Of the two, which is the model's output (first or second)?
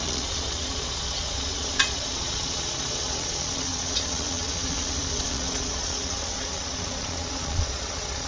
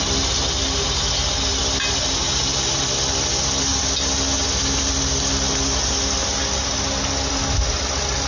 first